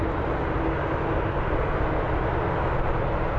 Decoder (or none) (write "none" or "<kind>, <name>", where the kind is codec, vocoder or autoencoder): none